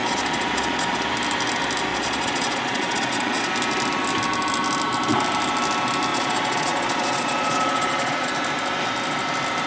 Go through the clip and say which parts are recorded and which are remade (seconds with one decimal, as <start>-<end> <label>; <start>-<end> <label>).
0.0-1.0 remade; 1.0-1.9 recorded; 1.9-3.5 remade; 3.5-6.1 recorded; 6.1-8.3 remade; 8.3-9.7 recorded